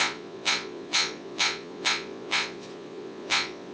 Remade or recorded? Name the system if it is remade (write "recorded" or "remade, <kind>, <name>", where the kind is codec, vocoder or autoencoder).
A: remade, vocoder, Vocos